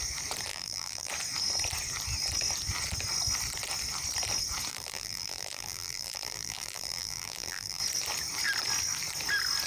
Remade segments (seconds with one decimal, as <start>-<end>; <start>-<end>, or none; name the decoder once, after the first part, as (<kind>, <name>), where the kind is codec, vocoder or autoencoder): 0.5-1.1 (vocoder, BigVGAN v2); 4.7-7.8